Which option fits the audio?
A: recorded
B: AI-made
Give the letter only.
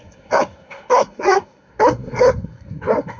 B